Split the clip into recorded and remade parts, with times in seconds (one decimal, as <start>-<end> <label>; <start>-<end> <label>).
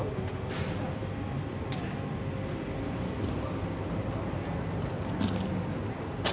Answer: 0.0-6.3 recorded